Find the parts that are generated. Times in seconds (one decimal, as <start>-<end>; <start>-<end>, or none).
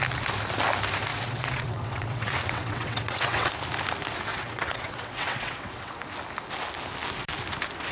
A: 1.1-3.5; 4.3-6.0